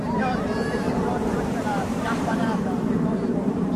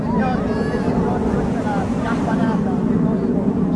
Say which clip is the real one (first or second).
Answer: second